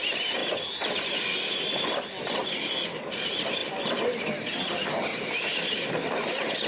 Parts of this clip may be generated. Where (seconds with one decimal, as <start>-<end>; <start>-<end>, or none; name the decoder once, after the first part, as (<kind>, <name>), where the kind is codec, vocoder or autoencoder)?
none